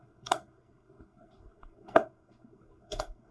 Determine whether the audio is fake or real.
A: fake